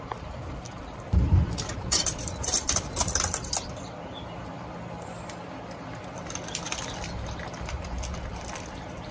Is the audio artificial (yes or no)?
yes